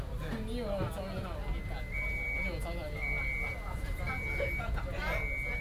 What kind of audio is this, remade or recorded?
recorded